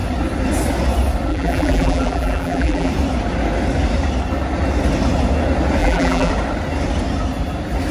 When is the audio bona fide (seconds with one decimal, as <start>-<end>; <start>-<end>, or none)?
0.0-1.3; 2.9-5.8; 6.3-7.9